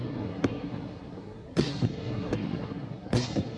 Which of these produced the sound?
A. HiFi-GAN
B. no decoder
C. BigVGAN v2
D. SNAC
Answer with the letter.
D